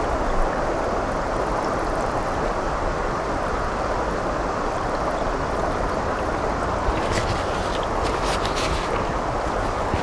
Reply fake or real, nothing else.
real